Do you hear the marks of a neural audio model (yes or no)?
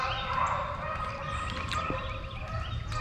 no